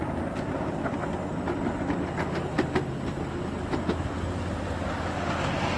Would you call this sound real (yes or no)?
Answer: yes